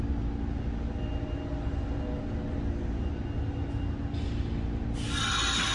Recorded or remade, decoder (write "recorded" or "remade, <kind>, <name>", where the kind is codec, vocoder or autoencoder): recorded